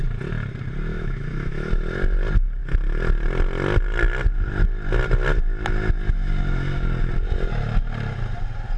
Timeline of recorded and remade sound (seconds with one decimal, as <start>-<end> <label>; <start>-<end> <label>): 0.0-0.9 recorded; 0.9-1.7 remade; 1.7-8.8 recorded